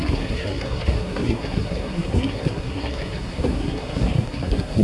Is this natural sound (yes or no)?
no